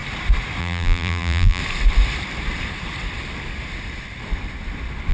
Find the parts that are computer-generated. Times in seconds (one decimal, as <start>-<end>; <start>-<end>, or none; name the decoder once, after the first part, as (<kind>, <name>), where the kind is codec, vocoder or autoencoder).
0.6-1.6 (vocoder, BigVGAN v2)